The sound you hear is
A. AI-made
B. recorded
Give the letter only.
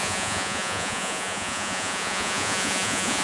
A